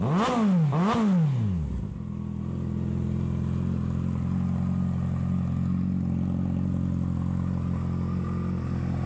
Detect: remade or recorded recorded